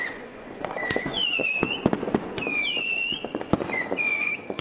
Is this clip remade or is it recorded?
remade